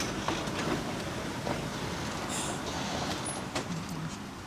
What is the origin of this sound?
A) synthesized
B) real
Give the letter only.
B